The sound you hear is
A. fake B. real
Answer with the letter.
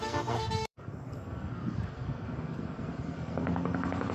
A